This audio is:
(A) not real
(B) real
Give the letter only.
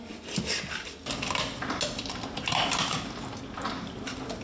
B